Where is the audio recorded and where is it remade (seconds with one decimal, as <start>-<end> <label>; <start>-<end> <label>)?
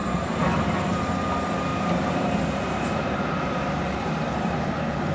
0.0-1.0 remade; 1.0-1.7 recorded; 1.7-5.1 remade